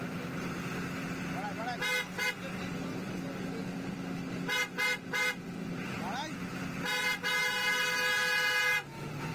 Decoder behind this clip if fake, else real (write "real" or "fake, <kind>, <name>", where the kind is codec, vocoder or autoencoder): real